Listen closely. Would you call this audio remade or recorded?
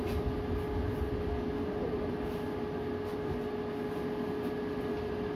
recorded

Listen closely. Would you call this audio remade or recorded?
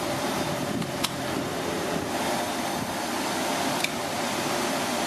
recorded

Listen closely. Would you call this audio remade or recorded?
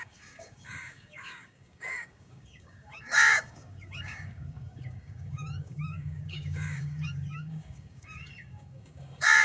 remade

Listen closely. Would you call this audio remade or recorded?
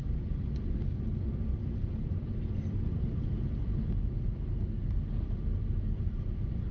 recorded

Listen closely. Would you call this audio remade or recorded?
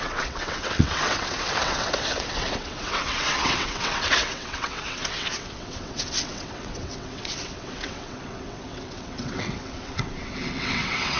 remade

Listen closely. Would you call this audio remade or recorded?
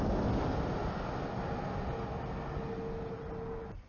recorded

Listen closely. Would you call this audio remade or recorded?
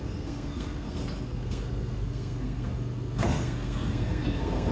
remade